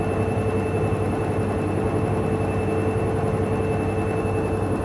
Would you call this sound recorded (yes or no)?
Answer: yes